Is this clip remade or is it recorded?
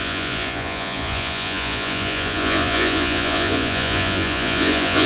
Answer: remade